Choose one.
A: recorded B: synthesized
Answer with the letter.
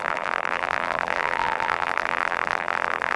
B